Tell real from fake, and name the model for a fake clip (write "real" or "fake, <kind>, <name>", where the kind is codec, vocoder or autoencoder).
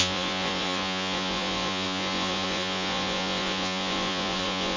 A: fake, vocoder, Vocos